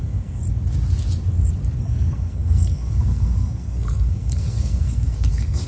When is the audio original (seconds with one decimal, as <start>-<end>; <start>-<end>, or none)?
0.4-1.9